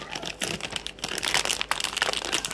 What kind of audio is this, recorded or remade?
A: recorded